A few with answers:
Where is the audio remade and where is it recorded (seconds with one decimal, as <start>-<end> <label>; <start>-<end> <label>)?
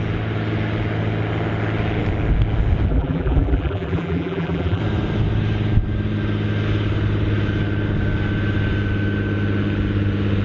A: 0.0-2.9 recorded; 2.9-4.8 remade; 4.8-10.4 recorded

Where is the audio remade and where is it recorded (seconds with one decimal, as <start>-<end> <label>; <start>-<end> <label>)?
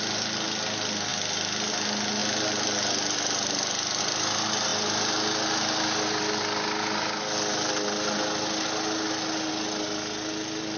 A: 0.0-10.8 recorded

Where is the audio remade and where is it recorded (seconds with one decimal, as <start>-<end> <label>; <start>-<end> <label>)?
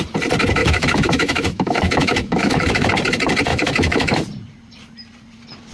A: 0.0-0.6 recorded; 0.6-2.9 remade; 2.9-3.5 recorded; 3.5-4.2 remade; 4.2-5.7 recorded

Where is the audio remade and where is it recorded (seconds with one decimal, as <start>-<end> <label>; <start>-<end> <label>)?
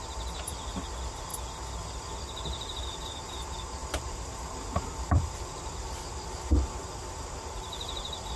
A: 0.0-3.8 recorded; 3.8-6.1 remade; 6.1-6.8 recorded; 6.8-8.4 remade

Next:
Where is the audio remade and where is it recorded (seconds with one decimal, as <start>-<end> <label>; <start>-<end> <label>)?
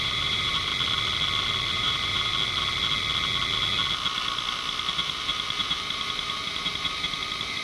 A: 0.0-0.7 remade; 0.7-1.7 recorded; 1.7-2.3 remade; 2.3-4.9 recorded; 4.9-7.6 remade